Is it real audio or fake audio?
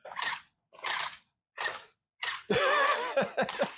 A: real